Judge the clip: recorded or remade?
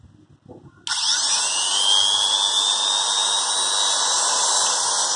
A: recorded